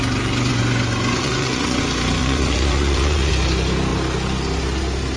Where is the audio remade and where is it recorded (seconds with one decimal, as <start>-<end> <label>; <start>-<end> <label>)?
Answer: 0.0-0.5 recorded; 0.5-1.8 remade; 1.8-2.2 recorded; 2.2-3.3 remade; 3.3-5.2 recorded